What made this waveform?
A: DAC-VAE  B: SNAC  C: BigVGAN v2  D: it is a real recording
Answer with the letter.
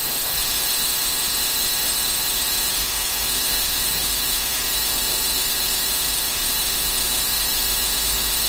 A